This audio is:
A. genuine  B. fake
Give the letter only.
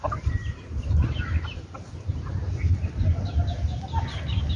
A